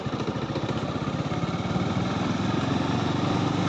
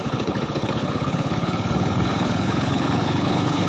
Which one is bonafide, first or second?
first